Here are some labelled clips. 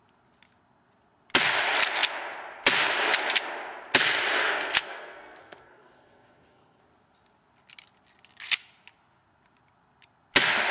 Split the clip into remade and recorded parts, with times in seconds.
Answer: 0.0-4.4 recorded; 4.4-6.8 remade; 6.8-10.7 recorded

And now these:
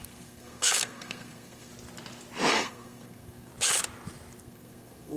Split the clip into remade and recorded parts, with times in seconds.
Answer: 0.0-1.7 remade; 1.7-2.5 recorded; 2.5-3.5 remade; 3.5-4.4 recorded; 4.4-5.2 remade

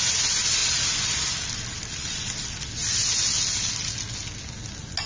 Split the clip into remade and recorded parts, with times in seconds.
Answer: 0.0-5.1 recorded

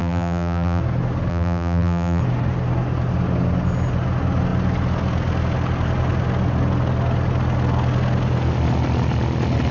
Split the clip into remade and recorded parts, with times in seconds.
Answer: 0.0-0.8 remade; 0.8-1.3 recorded; 1.3-2.2 remade; 2.2-9.7 recorded

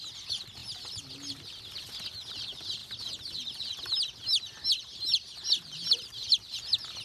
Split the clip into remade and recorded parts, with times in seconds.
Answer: 0.0-7.0 recorded

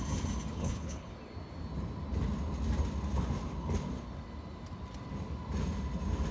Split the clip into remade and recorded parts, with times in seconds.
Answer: 0.0-0.5 recorded; 0.5-1.1 remade; 1.1-6.3 recorded

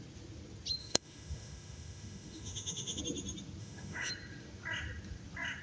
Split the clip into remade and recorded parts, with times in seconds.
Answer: 0.0-0.8 recorded; 0.8-3.0 remade; 3.0-3.6 recorded; 3.6-4.1 remade; 4.1-5.6 recorded